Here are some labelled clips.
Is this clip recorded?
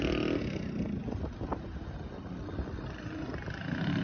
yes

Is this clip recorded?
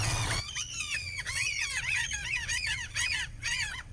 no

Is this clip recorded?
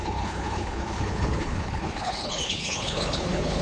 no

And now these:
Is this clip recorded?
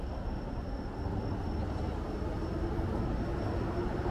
yes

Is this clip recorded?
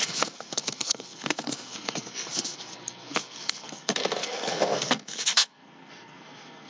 no